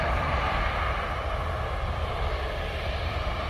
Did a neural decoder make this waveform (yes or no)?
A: yes